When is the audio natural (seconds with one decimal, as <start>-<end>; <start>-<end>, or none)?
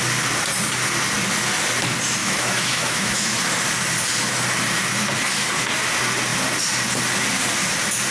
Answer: 0.0-2.2; 3.4-8.1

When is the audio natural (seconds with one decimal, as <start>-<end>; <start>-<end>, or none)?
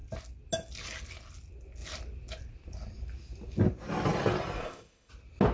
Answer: 0.0-4.6; 5.1-5.5